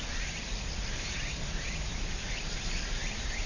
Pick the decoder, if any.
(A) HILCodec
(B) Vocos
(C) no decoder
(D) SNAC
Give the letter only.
C